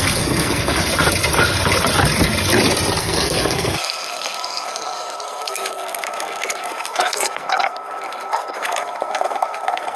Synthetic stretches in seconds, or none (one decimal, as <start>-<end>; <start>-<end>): 0.0-0.9; 3.0-10.0